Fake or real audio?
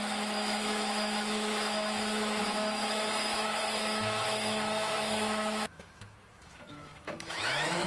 fake